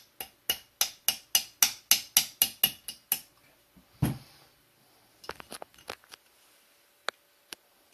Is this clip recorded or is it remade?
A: recorded